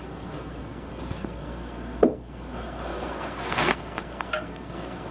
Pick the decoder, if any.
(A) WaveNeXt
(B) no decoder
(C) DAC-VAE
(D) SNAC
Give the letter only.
D